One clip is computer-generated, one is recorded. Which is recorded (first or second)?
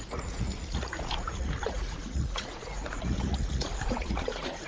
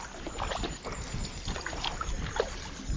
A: second